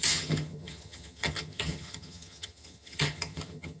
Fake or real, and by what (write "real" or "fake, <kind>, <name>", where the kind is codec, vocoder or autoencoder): fake, vocoder, HiFi-GAN